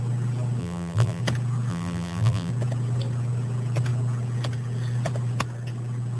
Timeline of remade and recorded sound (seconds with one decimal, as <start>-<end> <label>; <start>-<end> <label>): 0.0-0.6 recorded; 0.6-1.2 remade; 1.2-1.7 recorded; 1.7-2.5 remade; 2.5-6.2 recorded